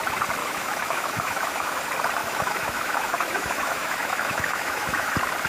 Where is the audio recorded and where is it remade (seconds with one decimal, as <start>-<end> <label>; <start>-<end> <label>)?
0.0-0.4 recorded; 0.4-1.8 remade; 1.8-2.2 recorded; 2.2-5.1 remade; 5.1-5.5 recorded